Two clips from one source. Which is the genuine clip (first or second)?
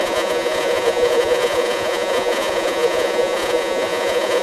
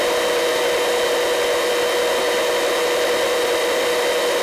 second